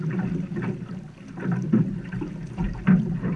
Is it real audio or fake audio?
real